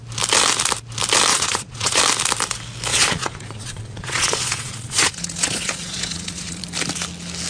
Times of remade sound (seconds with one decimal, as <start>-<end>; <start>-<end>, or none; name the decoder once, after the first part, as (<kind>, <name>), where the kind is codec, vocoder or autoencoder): 1.3-2.0 (vocoder, Vocos); 2.9-6.6